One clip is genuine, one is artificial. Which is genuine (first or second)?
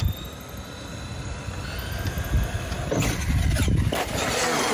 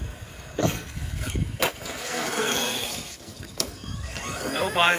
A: first